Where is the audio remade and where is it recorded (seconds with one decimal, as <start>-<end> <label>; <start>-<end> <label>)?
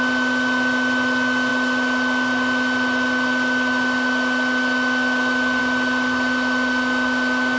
0.0-7.6 recorded